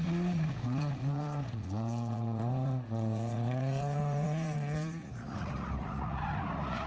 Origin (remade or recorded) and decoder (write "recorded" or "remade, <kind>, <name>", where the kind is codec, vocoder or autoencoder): remade, vocoder, Vocos